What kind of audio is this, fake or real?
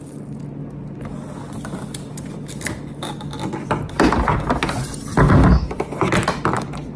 real